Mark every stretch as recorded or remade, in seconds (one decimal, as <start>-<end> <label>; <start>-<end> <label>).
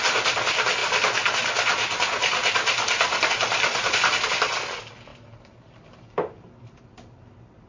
0.0-0.8 recorded; 0.8-3.3 remade; 3.3-5.1 recorded; 5.1-6.8 remade; 6.8-7.7 recorded